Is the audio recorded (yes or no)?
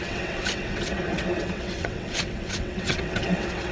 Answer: no